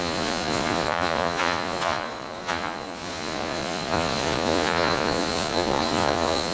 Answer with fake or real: fake